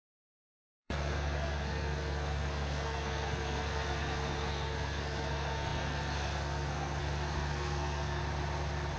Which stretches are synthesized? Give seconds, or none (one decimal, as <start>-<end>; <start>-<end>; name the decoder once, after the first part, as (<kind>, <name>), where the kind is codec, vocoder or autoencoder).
0.0-8.2 (codec, SNAC)